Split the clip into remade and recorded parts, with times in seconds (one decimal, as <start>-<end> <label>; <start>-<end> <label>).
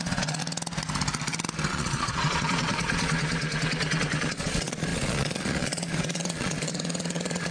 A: 0.0-0.4 remade; 0.4-1.7 recorded; 1.7-7.5 remade